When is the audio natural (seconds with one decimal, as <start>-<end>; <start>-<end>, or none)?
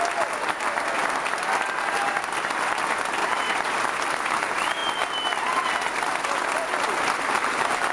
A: 0.0-3.2; 3.8-7.9